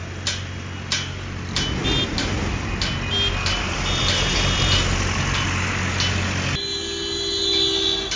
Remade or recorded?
recorded